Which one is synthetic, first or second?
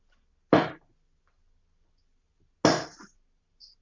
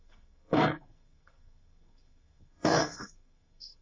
second